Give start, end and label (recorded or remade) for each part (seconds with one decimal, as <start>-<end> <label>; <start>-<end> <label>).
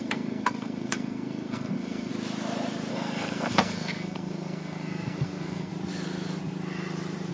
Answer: 0.0-2.1 remade; 2.1-2.9 recorded; 2.9-5.7 remade; 5.7-7.3 recorded